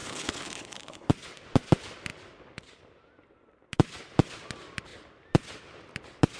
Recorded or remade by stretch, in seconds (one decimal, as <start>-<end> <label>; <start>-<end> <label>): 0.0-1.1 remade; 1.1-6.4 recorded

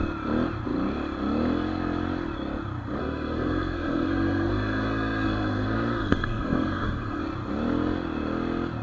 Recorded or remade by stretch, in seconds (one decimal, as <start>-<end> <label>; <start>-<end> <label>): 0.0-3.0 recorded; 3.0-7.2 remade; 7.2-8.8 recorded